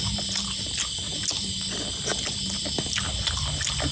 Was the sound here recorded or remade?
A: recorded